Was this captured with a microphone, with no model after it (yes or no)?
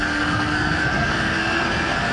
no